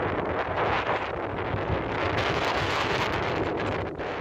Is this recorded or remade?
recorded